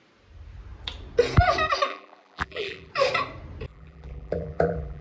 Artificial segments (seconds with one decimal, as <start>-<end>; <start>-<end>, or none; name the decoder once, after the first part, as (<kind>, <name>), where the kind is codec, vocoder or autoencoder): 1.9-2.9 (vocoder, BigVGAN v2); 3.7-5.0